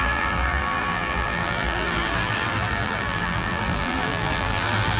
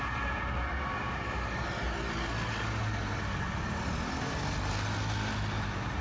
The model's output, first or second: first